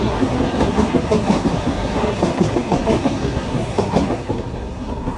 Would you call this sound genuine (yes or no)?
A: no